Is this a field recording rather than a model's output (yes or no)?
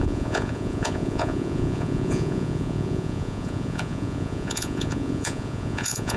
no